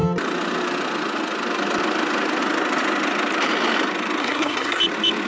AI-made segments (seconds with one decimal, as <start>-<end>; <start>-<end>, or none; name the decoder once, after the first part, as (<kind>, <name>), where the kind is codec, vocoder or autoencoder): 4.2-4.8 (codec, SNAC)